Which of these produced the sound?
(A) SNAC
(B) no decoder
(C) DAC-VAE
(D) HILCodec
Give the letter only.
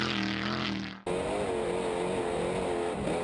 B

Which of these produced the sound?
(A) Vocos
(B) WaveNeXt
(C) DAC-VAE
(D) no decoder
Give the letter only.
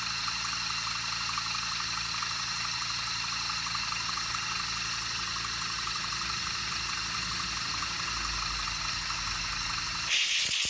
D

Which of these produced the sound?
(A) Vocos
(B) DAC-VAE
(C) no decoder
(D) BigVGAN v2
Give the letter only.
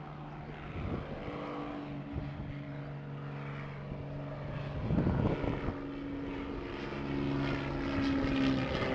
C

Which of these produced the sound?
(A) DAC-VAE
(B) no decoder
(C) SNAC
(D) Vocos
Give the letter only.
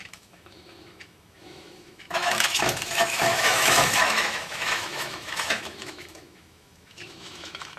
A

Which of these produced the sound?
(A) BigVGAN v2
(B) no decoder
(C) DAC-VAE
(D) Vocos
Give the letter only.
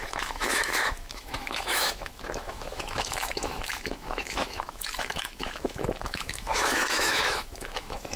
C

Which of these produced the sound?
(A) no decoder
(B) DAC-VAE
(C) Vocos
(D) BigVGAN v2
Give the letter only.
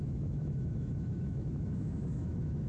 B